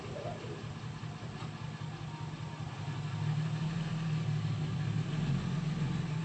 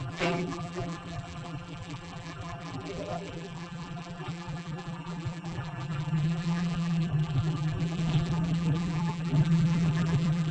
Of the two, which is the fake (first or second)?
second